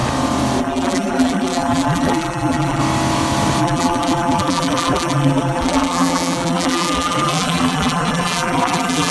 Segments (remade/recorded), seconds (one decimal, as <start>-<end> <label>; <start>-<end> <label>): 0.0-0.6 recorded; 0.6-2.8 remade; 2.8-3.6 recorded; 3.6-9.1 remade

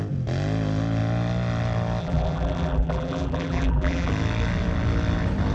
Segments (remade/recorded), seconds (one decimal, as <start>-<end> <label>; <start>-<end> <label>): 0.0-2.0 recorded; 2.0-4.1 remade; 4.1-5.5 recorded